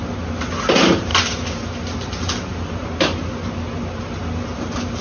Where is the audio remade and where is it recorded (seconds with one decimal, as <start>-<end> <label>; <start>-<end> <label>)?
0.0-5.0 recorded